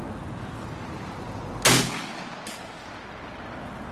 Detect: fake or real real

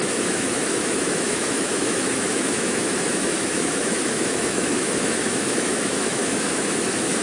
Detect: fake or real fake